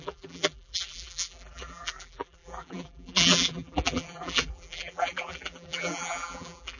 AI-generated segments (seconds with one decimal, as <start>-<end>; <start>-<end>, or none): 0.0-6.8